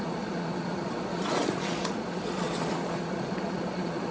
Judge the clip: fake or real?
fake